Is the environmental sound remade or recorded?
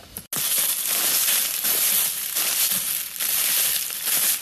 recorded